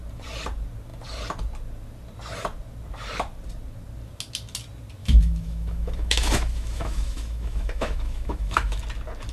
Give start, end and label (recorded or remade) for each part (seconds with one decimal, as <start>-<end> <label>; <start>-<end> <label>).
0.0-5.0 recorded; 5.0-8.8 remade; 8.8-9.3 recorded